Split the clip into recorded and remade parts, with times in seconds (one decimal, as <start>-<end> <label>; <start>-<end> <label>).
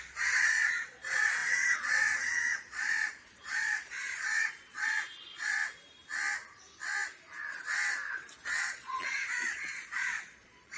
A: 0.0-5.6 remade; 5.6-8.6 recorded; 8.6-10.8 remade